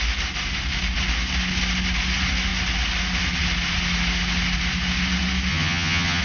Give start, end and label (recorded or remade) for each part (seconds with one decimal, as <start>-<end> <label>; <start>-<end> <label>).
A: 0.0-5.5 recorded; 5.5-6.2 remade